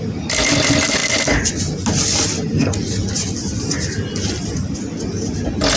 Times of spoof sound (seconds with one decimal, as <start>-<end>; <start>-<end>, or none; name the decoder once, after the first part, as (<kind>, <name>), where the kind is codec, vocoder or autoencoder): none